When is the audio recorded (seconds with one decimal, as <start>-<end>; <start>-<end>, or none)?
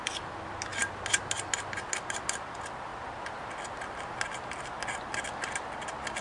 0.0-6.2